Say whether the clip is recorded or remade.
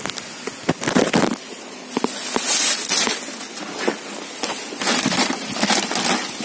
recorded